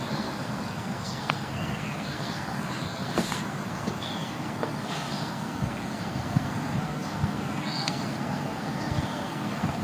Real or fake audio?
fake